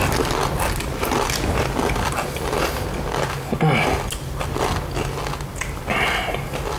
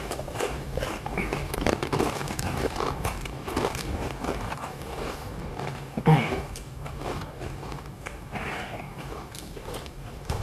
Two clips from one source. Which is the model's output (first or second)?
second